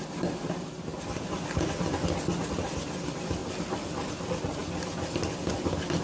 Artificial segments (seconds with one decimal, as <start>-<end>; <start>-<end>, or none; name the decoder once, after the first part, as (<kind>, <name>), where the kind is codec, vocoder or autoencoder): 3.4-4.1 (vocoder, BigVGAN v2); 4.6-5.5